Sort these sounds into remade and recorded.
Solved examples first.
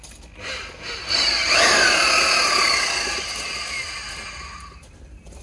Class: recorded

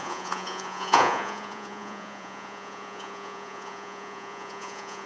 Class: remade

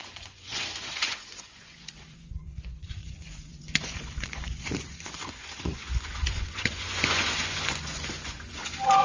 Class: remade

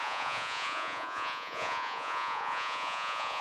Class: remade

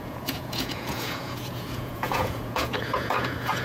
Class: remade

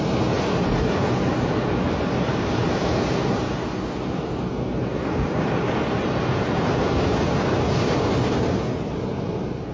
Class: recorded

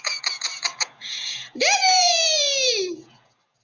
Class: remade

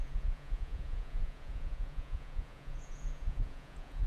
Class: remade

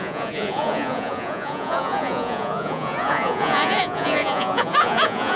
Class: remade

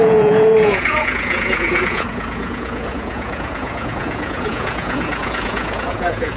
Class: remade